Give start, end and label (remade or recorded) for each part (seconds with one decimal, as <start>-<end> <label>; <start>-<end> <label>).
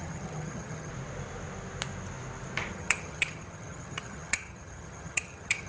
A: 0.0-0.9 remade; 0.9-2.7 recorded; 2.7-5.7 remade